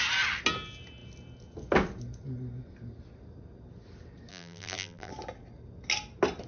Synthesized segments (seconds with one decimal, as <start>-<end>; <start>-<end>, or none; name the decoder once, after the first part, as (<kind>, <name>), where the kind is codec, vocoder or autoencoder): 4.3-5.1 (vocoder, BigVGAN v2)